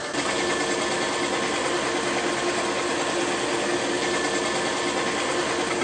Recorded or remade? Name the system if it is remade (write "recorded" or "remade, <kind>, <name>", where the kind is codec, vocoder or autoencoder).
recorded